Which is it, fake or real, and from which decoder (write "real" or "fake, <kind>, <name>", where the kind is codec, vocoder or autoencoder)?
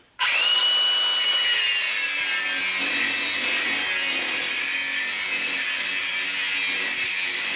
real